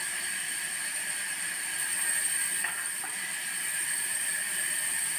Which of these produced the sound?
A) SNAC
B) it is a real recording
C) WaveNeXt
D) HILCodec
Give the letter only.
B